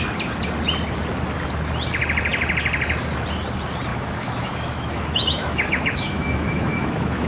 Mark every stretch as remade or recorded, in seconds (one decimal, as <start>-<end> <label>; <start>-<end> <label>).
0.0-3.9 recorded; 3.9-7.3 remade